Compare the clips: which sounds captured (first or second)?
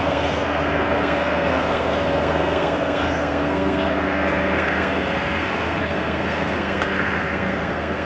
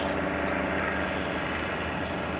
second